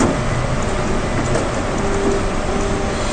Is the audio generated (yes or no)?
no